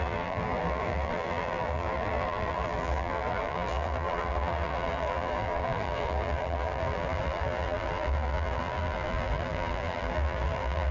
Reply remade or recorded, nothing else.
remade